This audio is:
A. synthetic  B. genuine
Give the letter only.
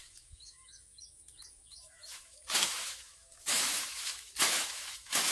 A